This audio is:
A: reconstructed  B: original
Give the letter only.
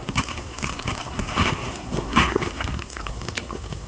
A